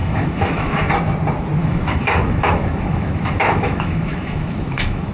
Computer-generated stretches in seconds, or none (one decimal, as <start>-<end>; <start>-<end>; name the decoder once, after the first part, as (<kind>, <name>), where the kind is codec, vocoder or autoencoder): 0.0-0.9 (autoencoder, DAC-VAE); 1.6-5.1